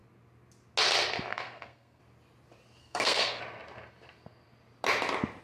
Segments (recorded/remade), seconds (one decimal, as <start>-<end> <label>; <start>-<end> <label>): 0.0-1.3 recorded; 1.3-2.0 remade; 2.0-2.8 recorded; 2.8-3.4 remade; 3.4-5.4 recorded